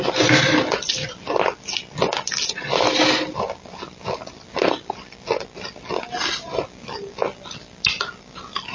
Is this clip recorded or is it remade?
recorded